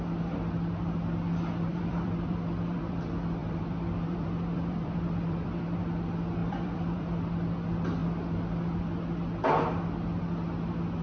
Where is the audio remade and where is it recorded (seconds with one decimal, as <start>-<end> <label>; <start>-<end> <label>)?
0.0-1.7 recorded; 1.7-3.0 remade; 3.0-3.4 recorded; 3.4-5.8 remade; 5.8-6.4 recorded; 6.4-7.2 remade; 7.2-11.0 recorded